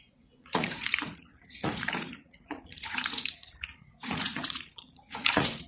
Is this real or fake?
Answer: fake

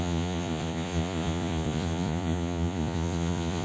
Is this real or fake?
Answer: fake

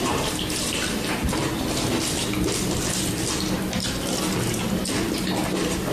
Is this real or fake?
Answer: real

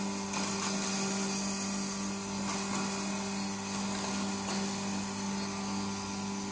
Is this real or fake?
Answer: real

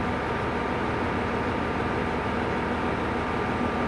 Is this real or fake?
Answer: real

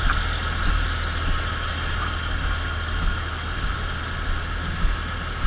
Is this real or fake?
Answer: real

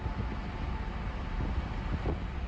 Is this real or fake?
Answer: real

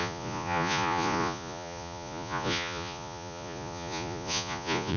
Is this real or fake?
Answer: fake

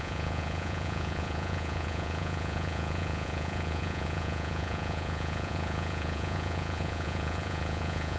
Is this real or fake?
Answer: fake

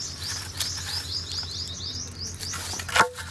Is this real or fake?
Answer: real